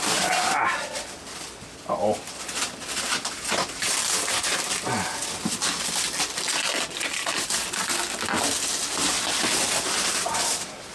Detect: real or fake real